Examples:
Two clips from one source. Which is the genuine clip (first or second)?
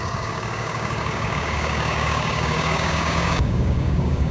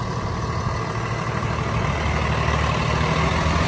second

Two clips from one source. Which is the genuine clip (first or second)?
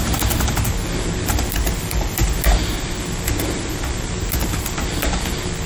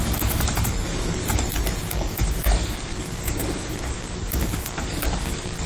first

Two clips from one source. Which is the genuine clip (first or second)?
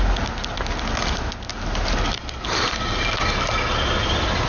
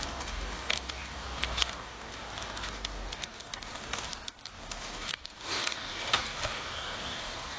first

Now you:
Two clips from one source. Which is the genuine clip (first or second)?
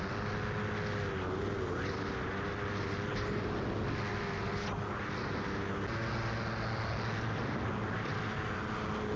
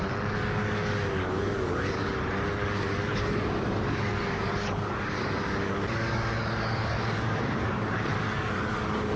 first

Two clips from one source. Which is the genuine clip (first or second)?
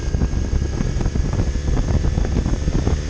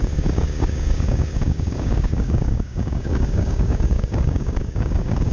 first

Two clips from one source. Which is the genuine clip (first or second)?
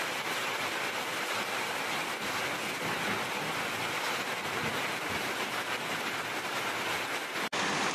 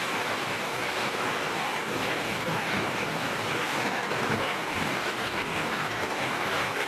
first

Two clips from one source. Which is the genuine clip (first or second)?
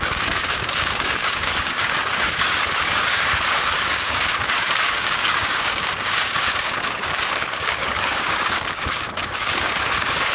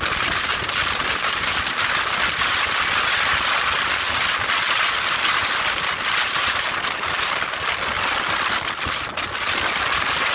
second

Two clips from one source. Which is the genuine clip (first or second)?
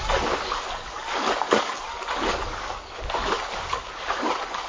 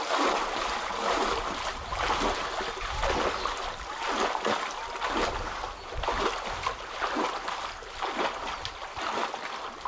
second